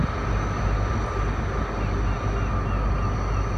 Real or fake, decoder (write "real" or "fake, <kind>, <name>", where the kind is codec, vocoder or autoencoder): real